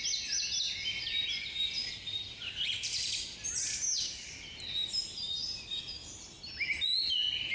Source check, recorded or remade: recorded